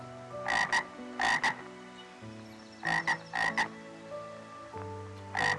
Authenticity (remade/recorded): recorded